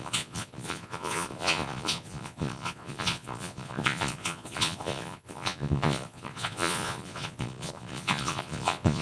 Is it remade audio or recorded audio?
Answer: remade